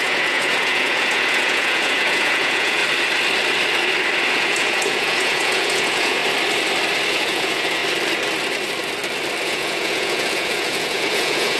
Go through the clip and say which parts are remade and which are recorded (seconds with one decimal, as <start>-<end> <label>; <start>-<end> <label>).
0.0-2.8 remade; 2.8-4.3 recorded; 4.3-6.2 remade; 6.2-7.1 recorded; 7.1-7.8 remade; 7.8-9.4 recorded; 9.4-11.6 remade